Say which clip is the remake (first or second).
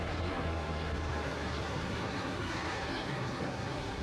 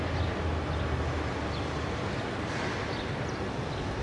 first